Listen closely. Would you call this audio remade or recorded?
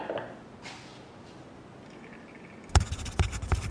recorded